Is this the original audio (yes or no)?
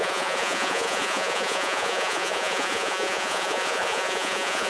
no